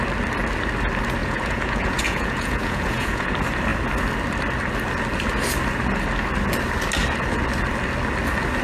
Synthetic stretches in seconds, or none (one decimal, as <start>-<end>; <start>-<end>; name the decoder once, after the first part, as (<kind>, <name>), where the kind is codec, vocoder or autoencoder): 1.2-3.3 (vocoder, Vocos)